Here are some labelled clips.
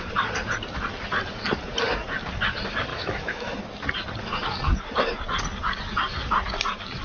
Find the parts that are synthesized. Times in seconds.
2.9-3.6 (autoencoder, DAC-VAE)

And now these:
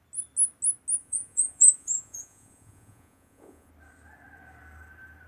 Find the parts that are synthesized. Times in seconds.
1.0-3.7 (vocoder, Vocos)

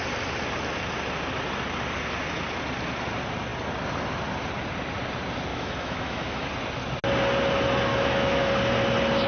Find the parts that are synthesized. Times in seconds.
5.5-6.5 (autoencoder, DAC-VAE); 7.9-8.5